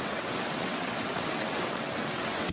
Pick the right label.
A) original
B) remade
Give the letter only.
B